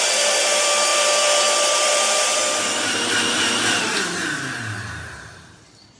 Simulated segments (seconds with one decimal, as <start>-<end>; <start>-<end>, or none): 0.0-2.4; 3.4-6.0